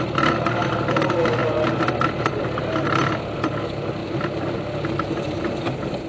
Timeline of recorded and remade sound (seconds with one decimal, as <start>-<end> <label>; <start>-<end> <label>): 0.0-4.0 recorded; 4.0-5.4 remade; 5.4-6.1 recorded